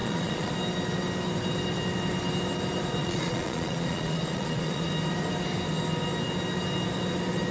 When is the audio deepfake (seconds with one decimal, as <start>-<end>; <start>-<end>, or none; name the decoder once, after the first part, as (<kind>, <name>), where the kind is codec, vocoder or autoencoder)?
0.0-0.5 (vocoder, Vocos); 3.0-4.9